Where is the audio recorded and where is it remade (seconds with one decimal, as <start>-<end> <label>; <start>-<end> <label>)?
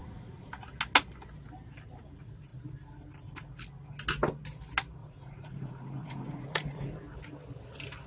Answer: 0.0-0.5 remade; 0.5-5.0 recorded; 5.0-7.0 remade; 7.0-8.1 recorded